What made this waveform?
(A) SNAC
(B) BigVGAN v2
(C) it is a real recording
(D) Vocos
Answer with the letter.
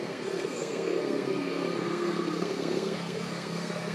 A